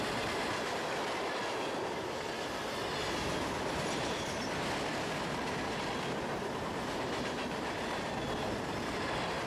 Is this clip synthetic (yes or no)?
yes